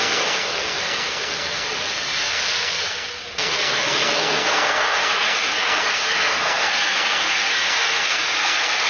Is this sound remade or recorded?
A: remade